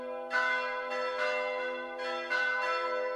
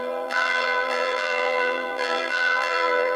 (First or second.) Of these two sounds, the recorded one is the first